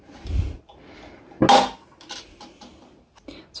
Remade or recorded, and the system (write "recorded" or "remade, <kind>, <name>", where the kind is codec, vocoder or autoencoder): recorded